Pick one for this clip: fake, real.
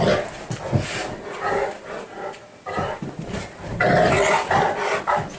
real